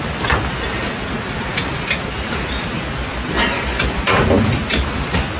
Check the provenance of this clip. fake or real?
real